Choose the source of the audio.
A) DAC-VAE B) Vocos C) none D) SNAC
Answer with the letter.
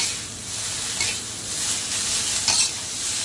C